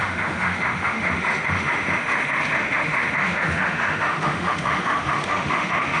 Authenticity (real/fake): fake